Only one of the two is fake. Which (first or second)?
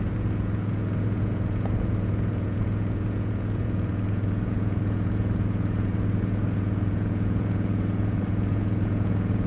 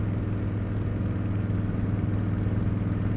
first